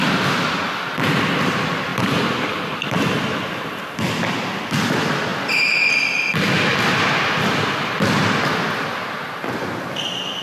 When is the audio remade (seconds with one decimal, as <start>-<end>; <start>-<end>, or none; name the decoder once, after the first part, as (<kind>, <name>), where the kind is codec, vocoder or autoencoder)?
1.9-3.8 (vocoder, BigVGAN v2)